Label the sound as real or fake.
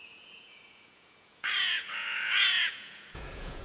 fake